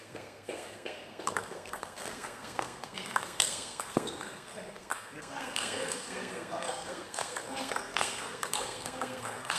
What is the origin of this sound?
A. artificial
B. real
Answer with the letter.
A